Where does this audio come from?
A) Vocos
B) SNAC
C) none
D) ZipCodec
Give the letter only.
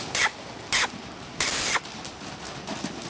C